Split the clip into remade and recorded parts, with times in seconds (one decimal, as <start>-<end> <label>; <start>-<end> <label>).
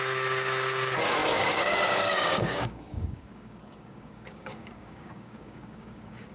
0.0-6.3 remade